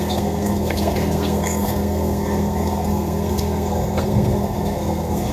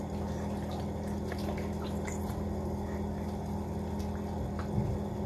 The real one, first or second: second